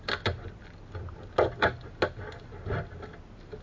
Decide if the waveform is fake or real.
real